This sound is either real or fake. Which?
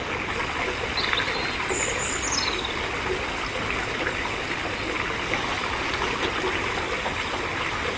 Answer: real